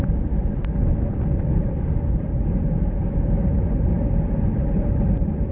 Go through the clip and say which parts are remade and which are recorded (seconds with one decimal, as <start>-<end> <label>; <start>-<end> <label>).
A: 0.0-2.4 remade; 2.4-4.8 recorded; 4.8-5.5 remade